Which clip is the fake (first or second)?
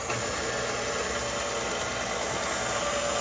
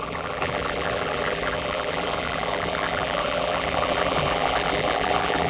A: second